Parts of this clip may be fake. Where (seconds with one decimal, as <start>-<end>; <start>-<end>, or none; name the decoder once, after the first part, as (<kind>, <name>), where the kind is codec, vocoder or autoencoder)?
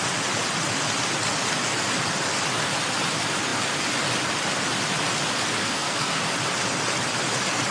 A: 5.6-6.2 (codec, SNAC)